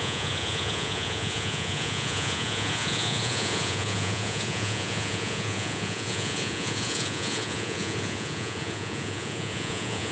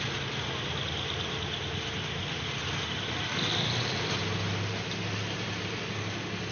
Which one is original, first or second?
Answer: second